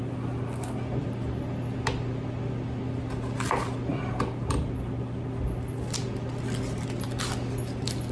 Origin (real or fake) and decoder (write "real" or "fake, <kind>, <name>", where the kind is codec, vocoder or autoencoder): real